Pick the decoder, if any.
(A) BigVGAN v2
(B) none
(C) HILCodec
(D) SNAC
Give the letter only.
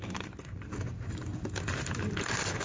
B